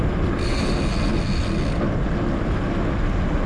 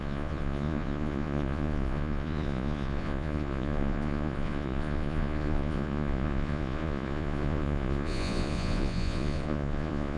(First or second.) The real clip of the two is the first